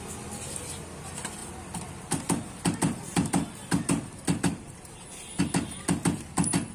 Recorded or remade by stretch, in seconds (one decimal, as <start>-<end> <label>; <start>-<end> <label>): 0.0-1.4 recorded; 1.4-5.4 remade; 5.4-6.7 recorded